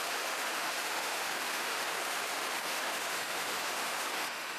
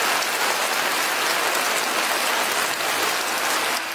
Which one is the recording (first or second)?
second